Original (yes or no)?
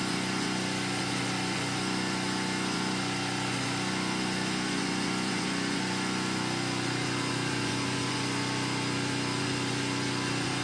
no